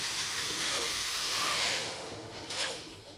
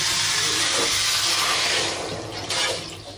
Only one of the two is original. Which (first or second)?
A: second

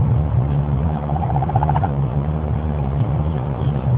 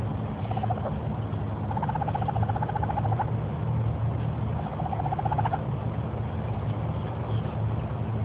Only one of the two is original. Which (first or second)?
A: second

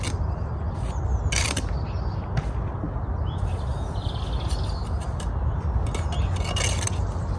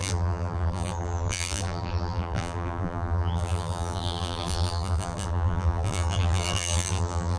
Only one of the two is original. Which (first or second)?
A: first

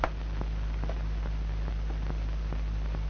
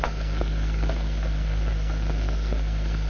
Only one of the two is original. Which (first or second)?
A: first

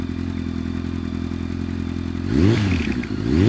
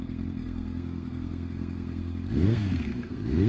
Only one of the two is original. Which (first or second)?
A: first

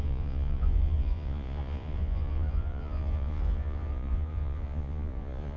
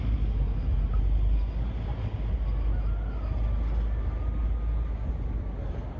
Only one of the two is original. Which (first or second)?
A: second